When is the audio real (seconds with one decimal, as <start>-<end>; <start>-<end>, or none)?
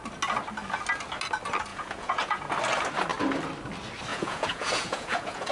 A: 0.0-1.7; 2.5-4.1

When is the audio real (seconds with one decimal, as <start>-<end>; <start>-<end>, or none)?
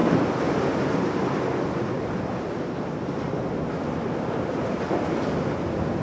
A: 0.0-6.0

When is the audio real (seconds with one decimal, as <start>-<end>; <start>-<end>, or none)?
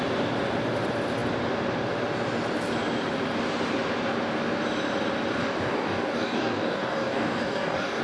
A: 0.0-5.4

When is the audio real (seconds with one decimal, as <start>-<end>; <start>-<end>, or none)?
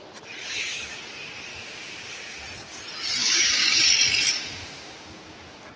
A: 0.0-0.4; 1.0-1.5; 2.4-3.2; 3.8-5.8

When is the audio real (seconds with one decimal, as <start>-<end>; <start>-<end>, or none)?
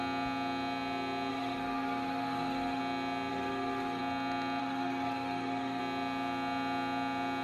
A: 0.0-1.3; 2.8-3.3; 4.0-4.6; 5.8-7.4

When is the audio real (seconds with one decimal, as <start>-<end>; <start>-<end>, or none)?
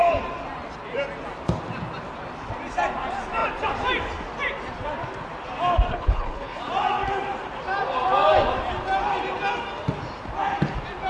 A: 0.0-5.9; 6.6-11.1